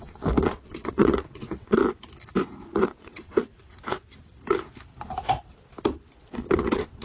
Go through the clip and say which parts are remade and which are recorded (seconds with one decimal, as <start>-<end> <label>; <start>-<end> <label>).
0.0-1.8 remade; 1.8-2.8 recorded; 2.8-3.5 remade; 3.5-6.4 recorded; 6.4-7.0 remade